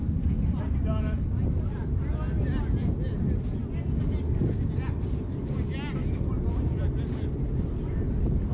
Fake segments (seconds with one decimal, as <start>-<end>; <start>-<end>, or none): none